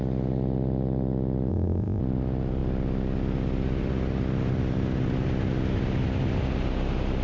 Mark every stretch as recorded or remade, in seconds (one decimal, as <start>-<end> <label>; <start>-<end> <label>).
0.0-1.5 recorded; 1.5-2.0 remade; 2.0-7.2 recorded